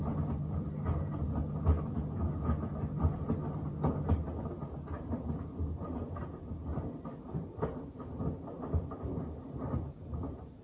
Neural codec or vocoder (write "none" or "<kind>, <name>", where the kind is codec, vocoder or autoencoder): none